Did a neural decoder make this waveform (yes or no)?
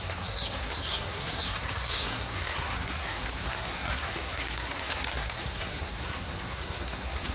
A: yes